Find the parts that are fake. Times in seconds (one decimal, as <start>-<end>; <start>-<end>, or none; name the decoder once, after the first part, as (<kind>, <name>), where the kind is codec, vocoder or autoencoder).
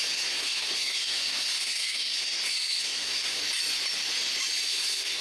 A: 0.0-3.4 (codec, SNAC); 4.7-5.2